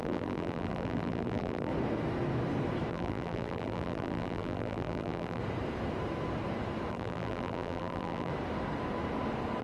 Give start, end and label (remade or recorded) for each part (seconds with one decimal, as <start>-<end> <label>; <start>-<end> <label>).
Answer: 0.0-1.7 remade; 1.7-2.9 recorded; 2.9-5.4 remade; 5.4-6.9 recorded; 6.9-8.3 remade; 8.3-9.6 recorded